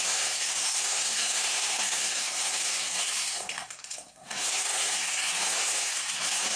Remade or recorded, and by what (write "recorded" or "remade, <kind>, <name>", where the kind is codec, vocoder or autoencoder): remade, codec, SNAC